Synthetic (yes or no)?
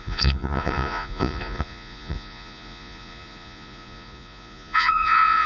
yes